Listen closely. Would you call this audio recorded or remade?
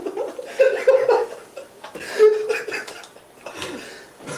recorded